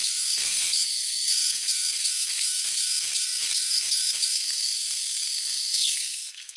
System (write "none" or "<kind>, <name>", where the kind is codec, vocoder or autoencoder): codec, SNAC